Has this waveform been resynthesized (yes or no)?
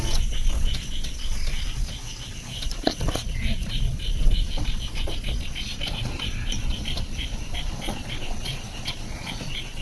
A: yes